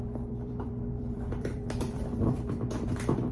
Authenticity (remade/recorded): remade